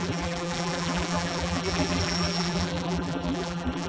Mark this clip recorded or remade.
remade